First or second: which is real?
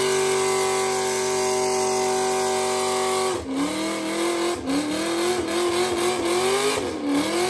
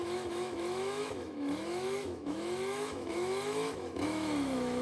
first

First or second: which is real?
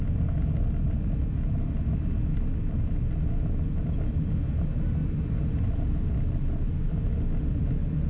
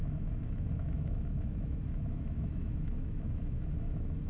first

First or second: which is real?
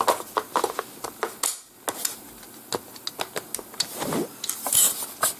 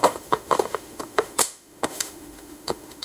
first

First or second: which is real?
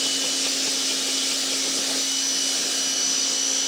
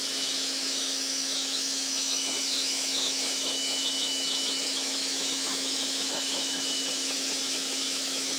first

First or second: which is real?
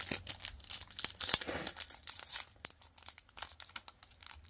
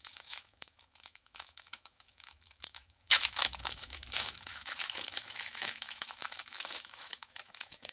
first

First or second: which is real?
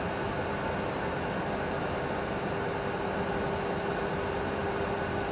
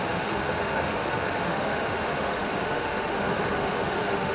first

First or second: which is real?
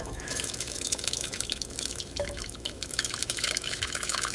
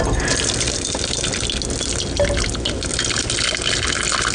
second